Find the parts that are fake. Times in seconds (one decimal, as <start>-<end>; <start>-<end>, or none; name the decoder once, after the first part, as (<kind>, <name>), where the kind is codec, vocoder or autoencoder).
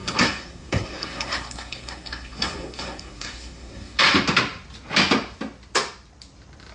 0.0-4.0 (codec, SNAC)